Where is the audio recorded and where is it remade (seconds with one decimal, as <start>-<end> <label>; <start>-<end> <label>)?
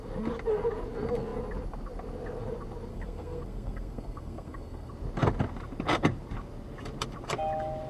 0.0-2.9 recorded; 2.9-4.9 remade; 4.9-7.9 recorded